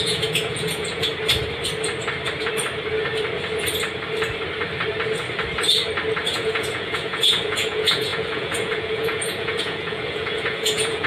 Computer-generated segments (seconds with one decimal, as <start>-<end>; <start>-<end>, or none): 0.0-1.1; 6.2-11.1